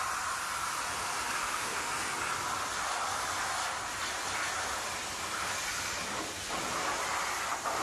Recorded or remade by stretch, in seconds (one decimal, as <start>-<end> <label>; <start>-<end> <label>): 0.0-1.4 recorded; 1.4-1.9 remade; 1.9-7.8 recorded